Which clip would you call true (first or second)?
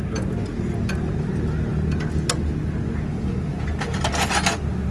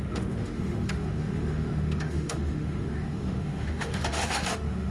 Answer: first